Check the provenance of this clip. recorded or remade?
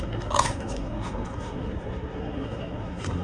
remade